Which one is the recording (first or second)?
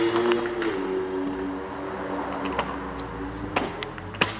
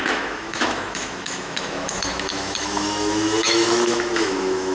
first